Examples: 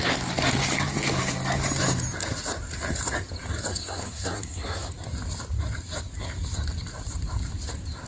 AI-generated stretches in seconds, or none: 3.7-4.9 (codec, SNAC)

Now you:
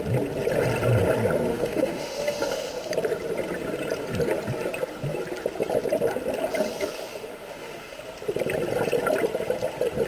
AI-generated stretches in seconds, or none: 1.5-2.7 (autoencoder, DAC-VAE); 6.7-8.0

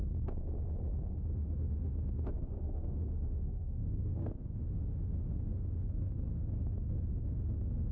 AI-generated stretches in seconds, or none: 1.2-7.9 (autoencoder, DAC-VAE)